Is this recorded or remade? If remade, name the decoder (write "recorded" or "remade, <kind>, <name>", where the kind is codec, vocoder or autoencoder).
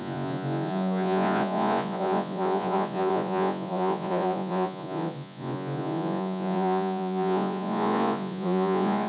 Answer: remade, vocoder, Vocos